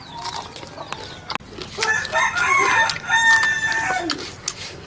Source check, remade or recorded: recorded